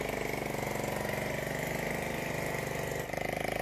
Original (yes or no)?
yes